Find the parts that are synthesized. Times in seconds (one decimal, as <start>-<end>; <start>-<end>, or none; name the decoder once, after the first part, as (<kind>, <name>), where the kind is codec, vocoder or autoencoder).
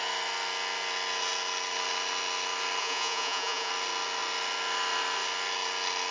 2.8-3.7 (vocoder, Vocos)